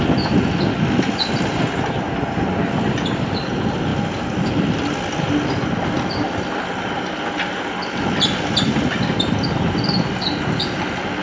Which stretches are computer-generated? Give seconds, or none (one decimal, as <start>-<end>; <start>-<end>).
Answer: none